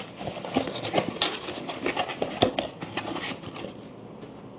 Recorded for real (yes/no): yes